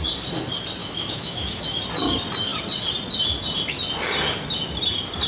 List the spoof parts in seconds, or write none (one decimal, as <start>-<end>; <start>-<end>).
0.8-1.8